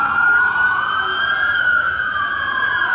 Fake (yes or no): yes